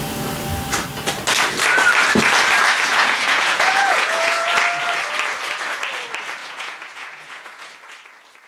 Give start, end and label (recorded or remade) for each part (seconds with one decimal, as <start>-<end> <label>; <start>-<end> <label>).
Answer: 0.0-2.9 recorded; 2.9-4.5 remade; 4.5-6.4 recorded; 6.4-7.7 remade; 7.7-8.5 recorded